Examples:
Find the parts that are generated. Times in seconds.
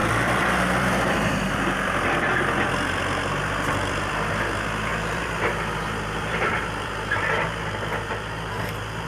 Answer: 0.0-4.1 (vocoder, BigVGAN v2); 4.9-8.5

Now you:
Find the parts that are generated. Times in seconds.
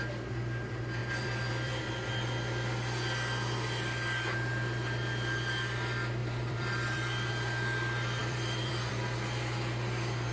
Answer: 1.0-1.8 (vocoder, BigVGAN v2); 6.2-7.3; 8.2-8.9